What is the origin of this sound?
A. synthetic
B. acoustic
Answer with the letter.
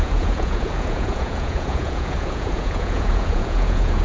A